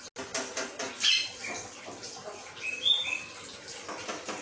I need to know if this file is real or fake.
real